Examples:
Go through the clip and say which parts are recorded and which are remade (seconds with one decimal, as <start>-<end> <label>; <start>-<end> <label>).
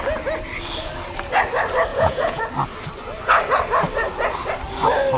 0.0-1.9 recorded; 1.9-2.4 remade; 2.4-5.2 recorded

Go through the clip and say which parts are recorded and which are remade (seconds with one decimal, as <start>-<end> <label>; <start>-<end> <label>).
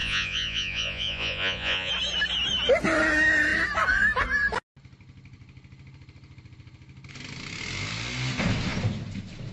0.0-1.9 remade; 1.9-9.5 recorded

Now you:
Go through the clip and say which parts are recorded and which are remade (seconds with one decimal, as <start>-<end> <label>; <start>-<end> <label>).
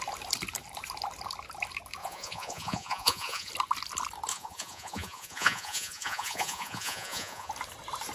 0.0-2.0 recorded; 2.0-3.5 remade; 3.5-4.3 recorded; 4.3-7.5 remade; 7.5-8.1 recorded